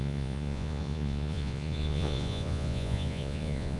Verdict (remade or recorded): remade